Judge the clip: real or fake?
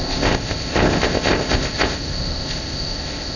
fake